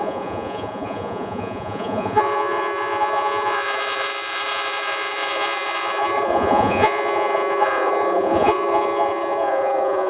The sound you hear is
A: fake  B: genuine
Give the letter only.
A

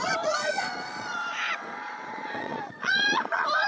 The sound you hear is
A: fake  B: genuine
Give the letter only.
A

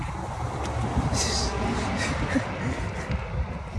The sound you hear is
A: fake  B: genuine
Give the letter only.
B